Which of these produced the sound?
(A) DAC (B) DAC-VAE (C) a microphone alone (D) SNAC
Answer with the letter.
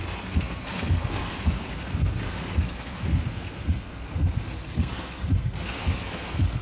D